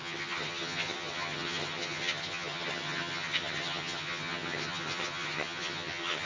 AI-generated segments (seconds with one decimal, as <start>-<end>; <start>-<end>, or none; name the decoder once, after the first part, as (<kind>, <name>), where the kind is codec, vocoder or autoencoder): 0.0-6.3 (vocoder, HiFi-GAN)